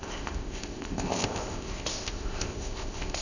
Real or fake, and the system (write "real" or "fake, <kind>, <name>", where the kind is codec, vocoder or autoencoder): fake, codec, ZipCodec